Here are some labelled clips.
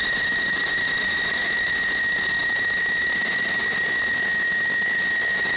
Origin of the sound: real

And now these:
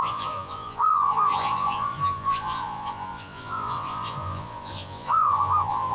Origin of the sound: fake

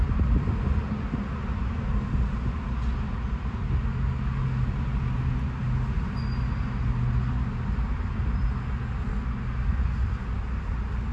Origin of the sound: real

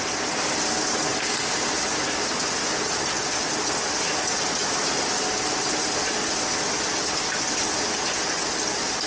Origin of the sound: real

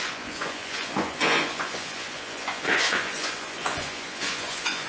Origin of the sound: fake